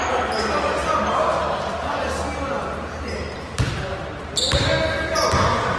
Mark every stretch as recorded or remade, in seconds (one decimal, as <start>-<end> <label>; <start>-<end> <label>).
0.0-5.8 recorded

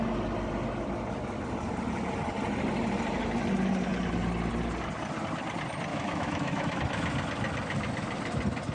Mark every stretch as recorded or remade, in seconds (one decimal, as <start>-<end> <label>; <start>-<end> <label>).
0.0-5.9 recorded; 5.9-6.8 remade; 6.8-8.7 recorded

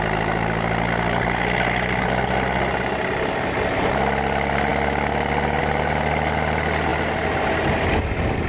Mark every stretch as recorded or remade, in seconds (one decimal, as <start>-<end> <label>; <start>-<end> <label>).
0.0-8.5 recorded

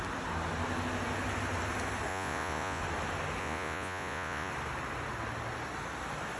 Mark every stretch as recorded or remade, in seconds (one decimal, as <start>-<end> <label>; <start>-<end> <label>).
0.0-2.1 recorded; 2.1-2.8 remade; 2.8-3.4 recorded; 3.4-4.5 remade; 4.5-6.4 recorded

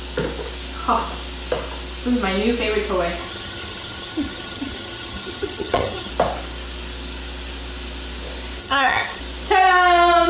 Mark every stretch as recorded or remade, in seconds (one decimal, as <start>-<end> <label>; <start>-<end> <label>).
0.0-3.2 recorded; 3.2-6.1 remade; 6.1-8.6 recorded; 8.6-9.2 remade; 9.2-10.3 recorded

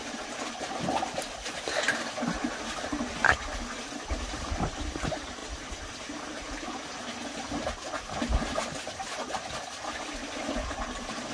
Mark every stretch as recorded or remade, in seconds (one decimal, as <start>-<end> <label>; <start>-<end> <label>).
0.0-4.1 recorded; 4.1-7.1 remade; 7.1-10.4 recorded; 10.4-11.3 remade

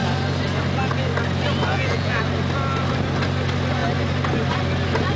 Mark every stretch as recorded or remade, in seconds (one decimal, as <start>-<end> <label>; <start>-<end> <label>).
0.0-1.7 recorded; 1.7-2.2 remade; 2.2-5.2 recorded

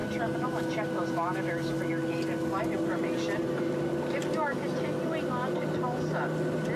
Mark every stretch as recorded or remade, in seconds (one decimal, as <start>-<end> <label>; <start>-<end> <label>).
0.0-6.8 recorded